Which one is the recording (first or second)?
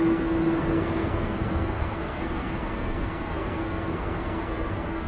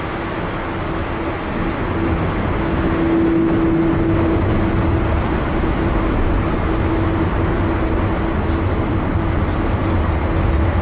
second